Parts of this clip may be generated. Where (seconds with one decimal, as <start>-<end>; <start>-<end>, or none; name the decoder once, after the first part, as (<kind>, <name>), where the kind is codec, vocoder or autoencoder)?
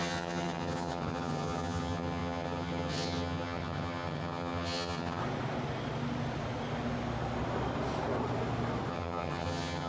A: 0.0-5.2 (vocoder, HiFi-GAN); 8.9-9.9